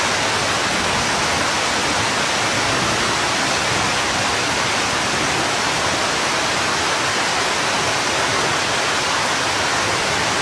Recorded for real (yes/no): yes